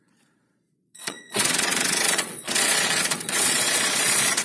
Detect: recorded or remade remade